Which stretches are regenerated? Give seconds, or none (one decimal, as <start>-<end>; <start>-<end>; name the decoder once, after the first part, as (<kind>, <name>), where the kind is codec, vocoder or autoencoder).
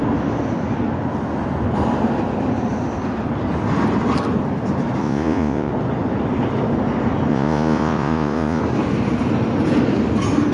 5.0-5.7 (vocoder, Vocos); 7.3-8.6